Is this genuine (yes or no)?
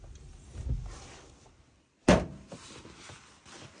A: yes